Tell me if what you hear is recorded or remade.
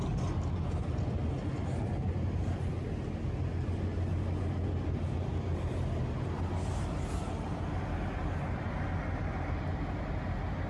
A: recorded